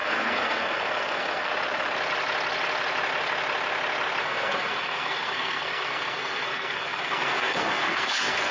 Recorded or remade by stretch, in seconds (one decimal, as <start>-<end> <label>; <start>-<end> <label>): 0.0-1.5 remade; 1.5-4.2 recorded; 4.2-8.5 remade